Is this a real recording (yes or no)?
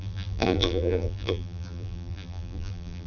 no